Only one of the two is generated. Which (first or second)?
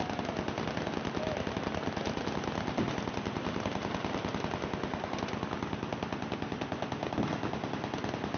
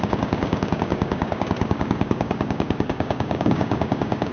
second